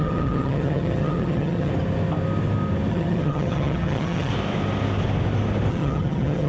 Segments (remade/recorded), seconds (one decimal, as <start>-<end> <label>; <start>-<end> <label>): 0.0-1.7 remade; 1.7-2.9 recorded; 2.9-4.3 remade; 4.3-5.7 recorded; 5.7-6.5 remade